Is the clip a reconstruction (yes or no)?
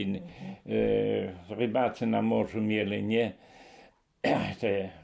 no